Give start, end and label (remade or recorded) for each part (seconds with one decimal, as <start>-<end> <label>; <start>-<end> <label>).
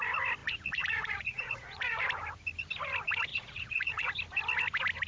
0.0-0.4 recorded; 0.4-2.0 remade; 2.0-3.3 recorded; 3.3-4.1 remade; 4.1-5.1 recorded